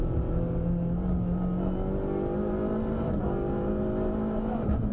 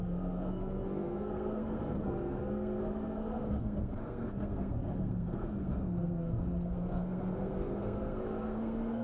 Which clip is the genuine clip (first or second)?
first